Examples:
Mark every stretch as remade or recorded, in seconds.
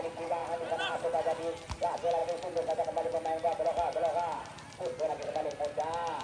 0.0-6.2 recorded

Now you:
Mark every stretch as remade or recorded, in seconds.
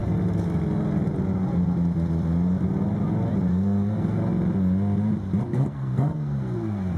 0.0-3.5 recorded; 3.5-4.2 remade; 4.2-5.4 recorded; 5.4-7.0 remade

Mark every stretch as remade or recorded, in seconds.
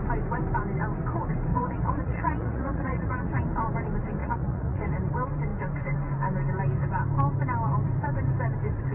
0.0-1.5 recorded; 1.5-3.3 remade; 3.3-4.2 recorded; 4.2-4.8 remade; 4.8-8.9 recorded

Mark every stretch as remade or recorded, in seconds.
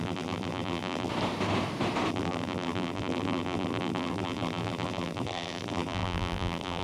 0.0-1.1 remade; 1.1-2.1 recorded; 2.1-6.8 remade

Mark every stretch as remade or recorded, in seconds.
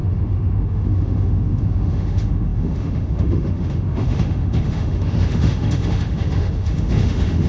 0.0-7.5 remade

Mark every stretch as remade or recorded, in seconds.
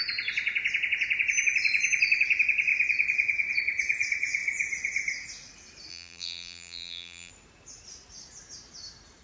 0.0-5.9 recorded; 5.9-7.3 remade; 7.3-9.2 recorded